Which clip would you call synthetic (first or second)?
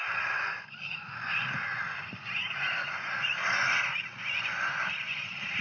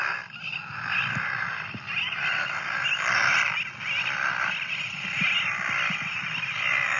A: first